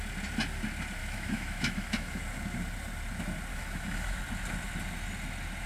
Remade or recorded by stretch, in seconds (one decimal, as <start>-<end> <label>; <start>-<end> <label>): 0.0-1.0 recorded; 1.0-2.2 remade; 2.2-3.5 recorded; 3.5-4.2 remade; 4.2-5.7 recorded